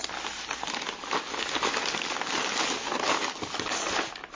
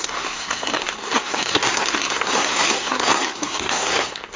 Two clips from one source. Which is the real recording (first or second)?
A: first